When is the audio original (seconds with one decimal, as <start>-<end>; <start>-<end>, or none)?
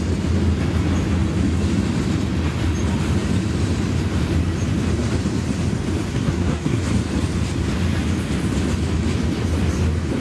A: 0.0-6.1; 6.8-10.2